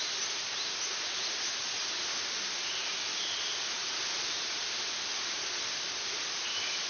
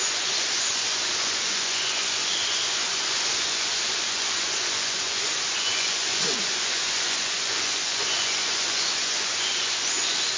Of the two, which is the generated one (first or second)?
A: second